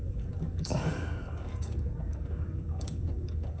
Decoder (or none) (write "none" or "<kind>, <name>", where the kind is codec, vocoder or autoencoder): codec, DAC